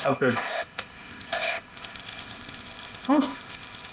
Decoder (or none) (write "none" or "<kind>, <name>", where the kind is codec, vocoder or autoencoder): codec, ZipCodec